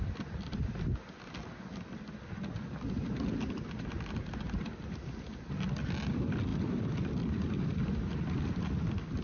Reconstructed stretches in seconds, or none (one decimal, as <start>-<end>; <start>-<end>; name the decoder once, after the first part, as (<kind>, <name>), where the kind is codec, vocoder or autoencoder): none